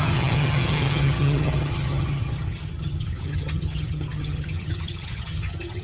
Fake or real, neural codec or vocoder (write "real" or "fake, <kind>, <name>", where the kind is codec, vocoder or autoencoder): fake, vocoder, HiFi-GAN